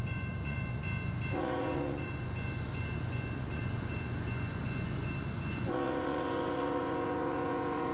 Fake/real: fake